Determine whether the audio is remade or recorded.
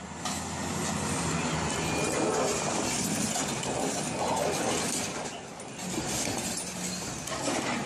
recorded